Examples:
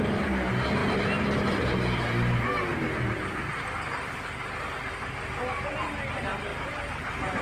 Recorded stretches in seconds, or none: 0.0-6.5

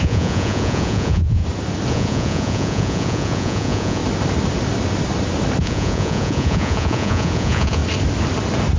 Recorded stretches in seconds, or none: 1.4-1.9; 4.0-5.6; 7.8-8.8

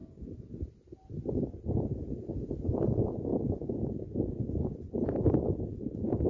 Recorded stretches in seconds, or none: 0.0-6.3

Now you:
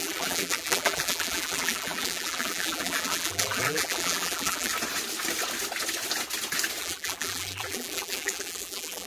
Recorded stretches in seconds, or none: 4.7-6.8